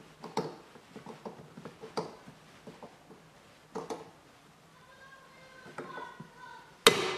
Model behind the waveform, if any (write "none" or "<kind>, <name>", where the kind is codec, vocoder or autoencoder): none